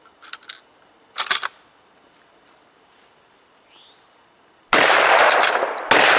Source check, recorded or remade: recorded